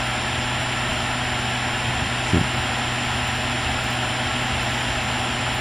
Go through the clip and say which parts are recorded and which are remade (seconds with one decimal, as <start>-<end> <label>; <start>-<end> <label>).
0.0-5.6 recorded